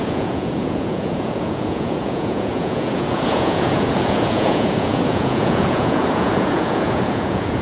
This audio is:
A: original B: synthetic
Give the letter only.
B